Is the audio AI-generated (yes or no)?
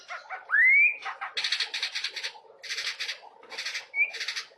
no